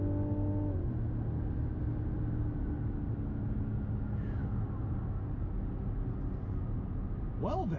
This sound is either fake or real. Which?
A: real